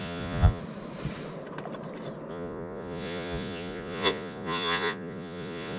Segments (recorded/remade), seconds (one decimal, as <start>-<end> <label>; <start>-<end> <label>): 0.0-0.6 remade; 0.6-2.3 recorded; 2.3-5.8 remade